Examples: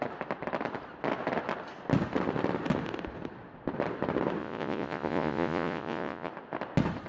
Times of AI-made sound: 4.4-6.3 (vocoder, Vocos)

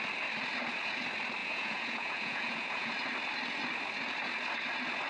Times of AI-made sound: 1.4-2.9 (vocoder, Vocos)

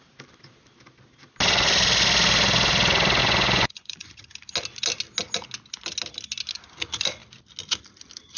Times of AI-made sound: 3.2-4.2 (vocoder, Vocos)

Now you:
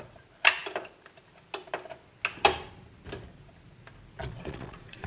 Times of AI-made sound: 4.2-5.1 (vocoder, Vocos)

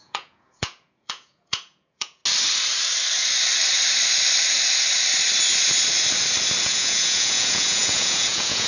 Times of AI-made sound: 0.0-2.2 (vocoder, Vocos); 6.6-8.7

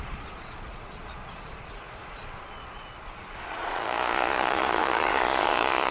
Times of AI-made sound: 0.0-5.9 (vocoder, Vocos)

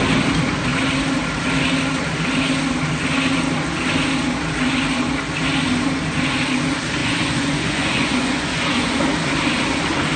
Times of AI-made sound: 7.0-9.0 (vocoder, Vocos)